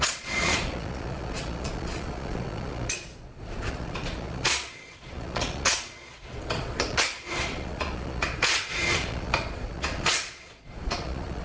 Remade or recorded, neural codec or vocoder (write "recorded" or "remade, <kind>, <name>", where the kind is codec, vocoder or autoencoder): remade, vocoder, Vocos